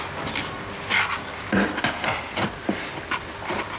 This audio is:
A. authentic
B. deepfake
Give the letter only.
A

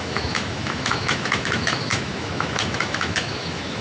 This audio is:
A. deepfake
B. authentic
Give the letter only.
A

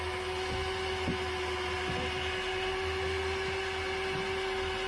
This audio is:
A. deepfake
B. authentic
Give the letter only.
B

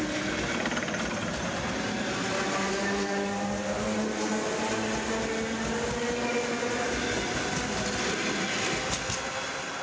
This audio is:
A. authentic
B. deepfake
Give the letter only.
A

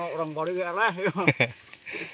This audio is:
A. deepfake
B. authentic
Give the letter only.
A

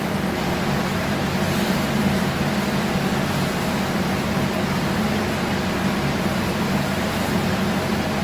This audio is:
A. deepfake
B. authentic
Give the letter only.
B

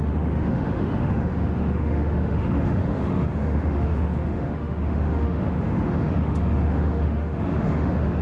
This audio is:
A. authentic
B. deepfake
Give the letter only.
B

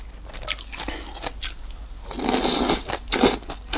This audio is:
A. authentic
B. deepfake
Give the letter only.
A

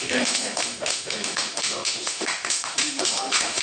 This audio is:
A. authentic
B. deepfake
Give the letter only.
B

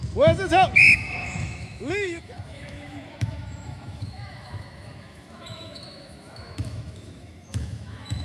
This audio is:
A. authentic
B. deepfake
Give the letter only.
B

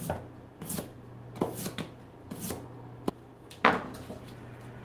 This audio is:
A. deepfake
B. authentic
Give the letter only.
B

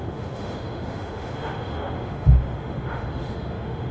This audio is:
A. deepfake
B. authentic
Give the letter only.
A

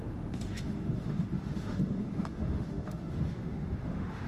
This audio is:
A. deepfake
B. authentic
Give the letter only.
A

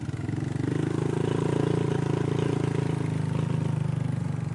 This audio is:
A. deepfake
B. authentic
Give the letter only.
B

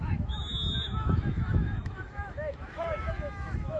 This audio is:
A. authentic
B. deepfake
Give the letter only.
B